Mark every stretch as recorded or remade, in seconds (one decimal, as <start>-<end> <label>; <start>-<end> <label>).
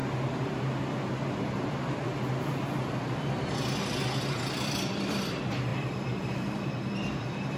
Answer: 0.0-1.3 recorded; 1.3-2.0 remade; 2.0-2.8 recorded; 2.8-7.6 remade